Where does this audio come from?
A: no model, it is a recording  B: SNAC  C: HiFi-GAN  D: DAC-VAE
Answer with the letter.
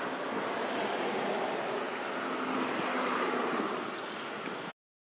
A